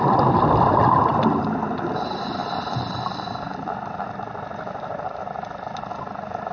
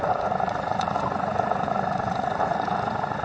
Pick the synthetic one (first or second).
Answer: second